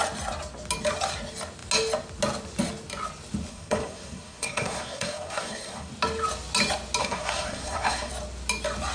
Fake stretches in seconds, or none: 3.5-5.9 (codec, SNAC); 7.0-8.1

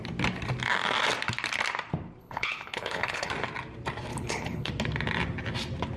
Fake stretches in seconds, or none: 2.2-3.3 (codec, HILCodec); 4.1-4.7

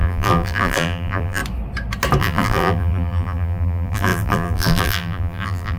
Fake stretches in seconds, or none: 0.0-1.4 (vocoder, BigVGAN v2); 2.2-5.8

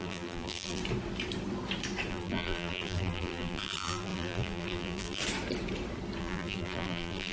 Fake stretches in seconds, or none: 0.0-0.8 (vocoder, BigVGAN v2); 2.1-5.2; 6.2-7.3

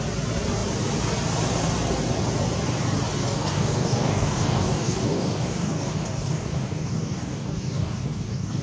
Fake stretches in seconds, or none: 3.2-8.6 (codec, DAC)

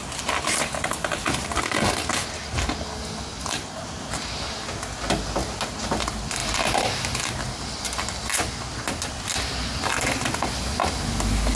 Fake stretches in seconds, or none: none

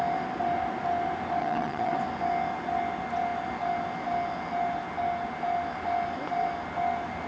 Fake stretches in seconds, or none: 1.4-1.9 (vocoder, HiFi-GAN)

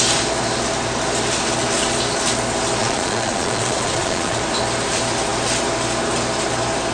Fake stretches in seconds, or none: 2.8-4.4 (vocoder, Vocos)